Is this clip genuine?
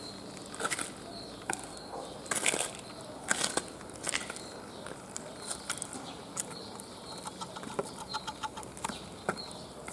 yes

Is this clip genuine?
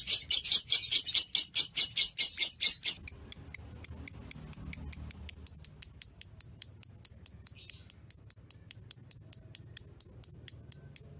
yes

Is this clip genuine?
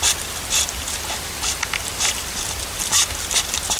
yes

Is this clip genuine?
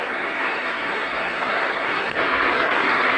no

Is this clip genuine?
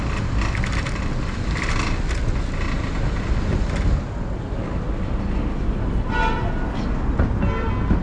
yes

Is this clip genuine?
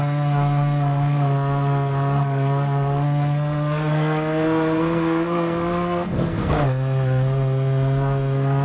no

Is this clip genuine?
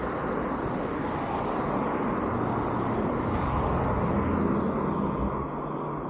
yes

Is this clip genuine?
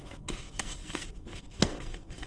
no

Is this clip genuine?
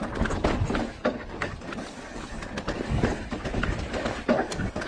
yes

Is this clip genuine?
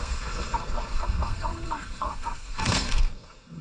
no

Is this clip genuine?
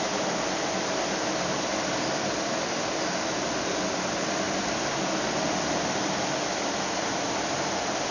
yes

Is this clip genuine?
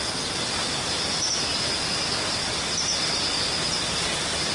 yes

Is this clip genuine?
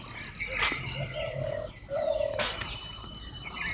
yes